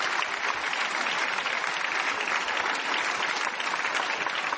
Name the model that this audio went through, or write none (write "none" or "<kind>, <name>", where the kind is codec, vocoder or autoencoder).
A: none